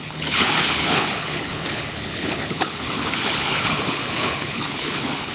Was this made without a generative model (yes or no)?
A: no